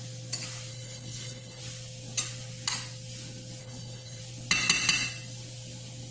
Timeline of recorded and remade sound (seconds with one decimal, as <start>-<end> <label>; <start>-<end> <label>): 0.0-0.7 recorded; 0.7-1.6 remade; 1.6-3.6 recorded; 3.6-4.2 remade; 4.2-6.1 recorded